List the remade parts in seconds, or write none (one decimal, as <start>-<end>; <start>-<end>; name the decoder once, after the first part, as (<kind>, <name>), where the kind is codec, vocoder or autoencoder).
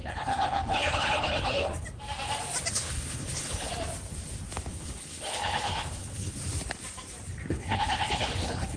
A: 0.0-1.7 (codec, HILCodec); 2.7-3.7; 4.7-6.4; 7.5-8.8